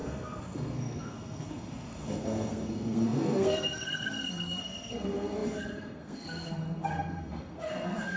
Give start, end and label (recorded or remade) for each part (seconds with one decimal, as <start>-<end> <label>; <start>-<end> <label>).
0.0-8.2 remade